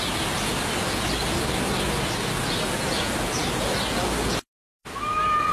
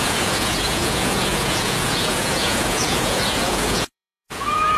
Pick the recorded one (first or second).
first